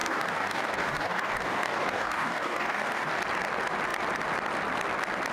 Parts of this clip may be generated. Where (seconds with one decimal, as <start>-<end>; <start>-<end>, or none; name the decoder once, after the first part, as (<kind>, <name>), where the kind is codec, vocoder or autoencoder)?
0.0-3.2 (codec, DAC)